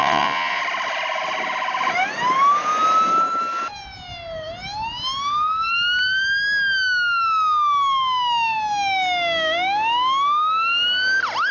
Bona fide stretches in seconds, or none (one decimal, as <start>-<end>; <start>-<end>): 0.6-11.5